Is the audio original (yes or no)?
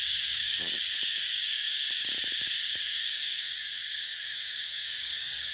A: no